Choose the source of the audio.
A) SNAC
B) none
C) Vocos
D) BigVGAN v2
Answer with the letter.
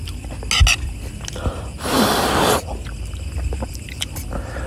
B